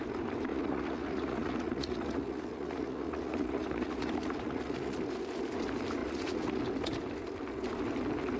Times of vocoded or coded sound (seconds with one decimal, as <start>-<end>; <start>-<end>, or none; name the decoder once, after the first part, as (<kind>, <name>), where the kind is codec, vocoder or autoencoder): 0.5-5.0 (vocoder, Vocos); 6.0-6.6